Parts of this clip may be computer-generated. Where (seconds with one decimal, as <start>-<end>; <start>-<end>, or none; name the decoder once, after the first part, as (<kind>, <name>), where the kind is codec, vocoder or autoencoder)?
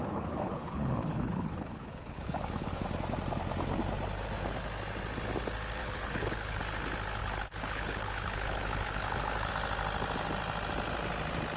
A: 0.0-2.8 (codec, HILCodec); 5.8-6.6; 7.2-9.5